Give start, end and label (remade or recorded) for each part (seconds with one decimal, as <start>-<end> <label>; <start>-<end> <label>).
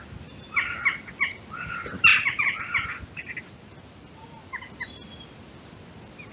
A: 0.0-6.3 recorded